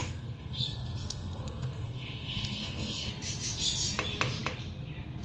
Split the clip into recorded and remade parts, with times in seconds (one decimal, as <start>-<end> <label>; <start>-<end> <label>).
0.0-3.1 remade; 3.1-5.2 recorded